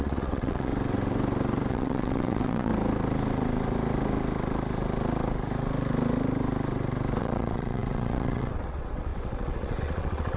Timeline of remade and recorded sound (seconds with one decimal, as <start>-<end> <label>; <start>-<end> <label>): 0.0-0.7 remade; 0.7-1.7 recorded; 1.7-2.7 remade; 2.7-7.2 recorded; 7.2-10.4 remade